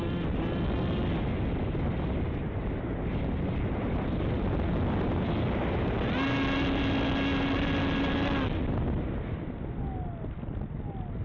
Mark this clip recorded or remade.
recorded